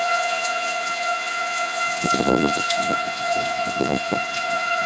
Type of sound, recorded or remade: remade